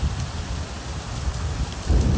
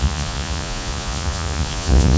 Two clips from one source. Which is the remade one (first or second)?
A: second